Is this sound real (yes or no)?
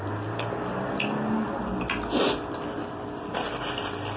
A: yes